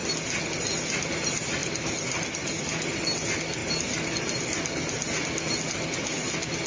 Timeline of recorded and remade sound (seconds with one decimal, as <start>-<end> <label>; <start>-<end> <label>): 0.0-6.7 recorded